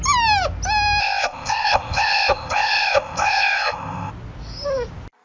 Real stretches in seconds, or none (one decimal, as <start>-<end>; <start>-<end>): 0.0-1.0; 4.1-5.2